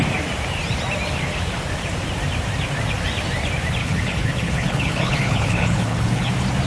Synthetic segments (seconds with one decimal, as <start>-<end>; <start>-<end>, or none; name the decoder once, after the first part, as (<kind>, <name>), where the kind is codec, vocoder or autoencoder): 3.8-6.3 (codec, HILCodec)